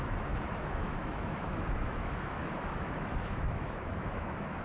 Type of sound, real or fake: fake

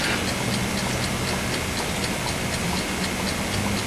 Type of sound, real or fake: real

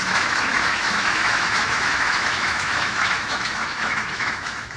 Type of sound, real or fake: fake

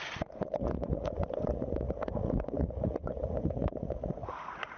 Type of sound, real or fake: fake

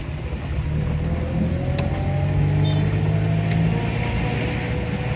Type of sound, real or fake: real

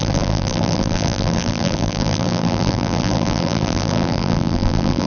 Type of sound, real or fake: fake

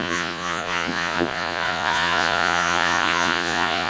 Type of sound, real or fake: fake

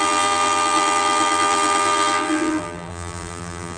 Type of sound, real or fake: fake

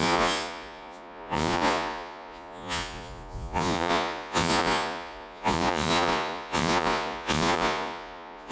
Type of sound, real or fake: fake